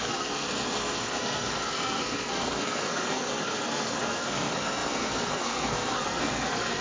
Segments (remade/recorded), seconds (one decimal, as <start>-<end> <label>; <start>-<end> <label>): 0.0-6.8 remade